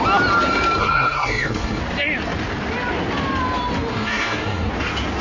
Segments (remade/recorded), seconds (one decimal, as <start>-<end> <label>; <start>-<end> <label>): 0.0-0.8 recorded; 0.8-1.8 remade; 1.8-3.9 recorded; 3.9-4.7 remade; 4.7-5.2 recorded